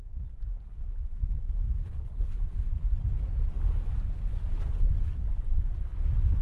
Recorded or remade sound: recorded